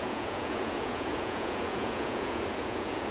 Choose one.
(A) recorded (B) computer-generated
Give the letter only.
B